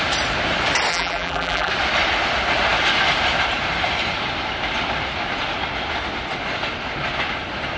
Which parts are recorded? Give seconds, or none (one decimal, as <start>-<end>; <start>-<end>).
0.0-0.9; 1.7-7.8